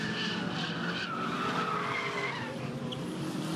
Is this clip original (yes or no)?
yes